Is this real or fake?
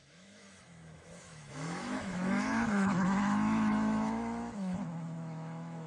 fake